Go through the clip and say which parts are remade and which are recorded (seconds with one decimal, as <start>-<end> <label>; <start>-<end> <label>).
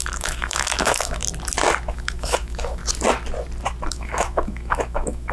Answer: 0.0-1.2 remade; 1.2-1.9 recorded; 1.9-2.8 remade; 2.8-3.9 recorded; 3.9-5.3 remade